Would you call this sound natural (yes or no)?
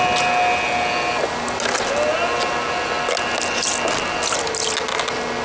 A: yes